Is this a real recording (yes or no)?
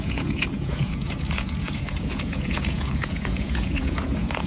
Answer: no